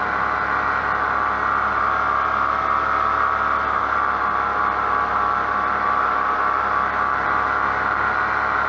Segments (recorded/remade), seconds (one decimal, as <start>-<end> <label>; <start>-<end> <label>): 0.0-8.7 recorded